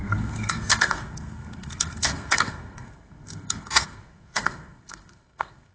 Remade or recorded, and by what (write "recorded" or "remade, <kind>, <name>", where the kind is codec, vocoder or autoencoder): remade, codec, SNAC